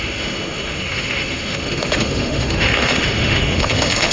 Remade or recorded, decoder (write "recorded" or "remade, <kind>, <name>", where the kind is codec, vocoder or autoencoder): remade, autoencoder, DAC-VAE